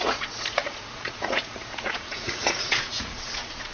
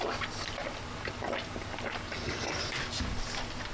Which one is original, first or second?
second